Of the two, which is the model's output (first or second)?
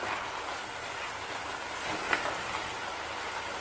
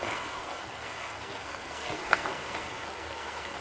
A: second